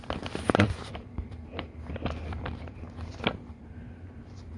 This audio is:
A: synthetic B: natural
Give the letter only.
A